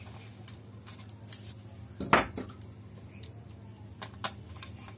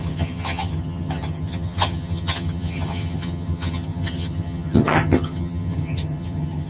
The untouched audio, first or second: first